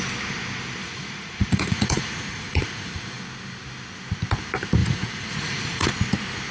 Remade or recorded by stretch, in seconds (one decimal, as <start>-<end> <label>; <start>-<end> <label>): 0.0-0.8 recorded; 0.8-3.2 remade; 3.2-4.8 recorded; 4.8-5.9 remade; 5.9-6.5 recorded